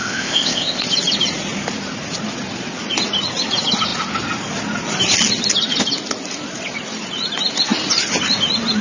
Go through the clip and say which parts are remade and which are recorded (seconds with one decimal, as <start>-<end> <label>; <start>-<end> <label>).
0.0-0.8 remade; 0.8-8.8 recorded